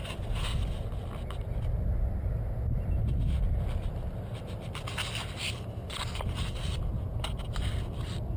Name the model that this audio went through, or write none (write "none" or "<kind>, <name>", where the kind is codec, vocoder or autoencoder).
none